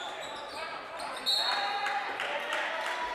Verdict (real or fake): real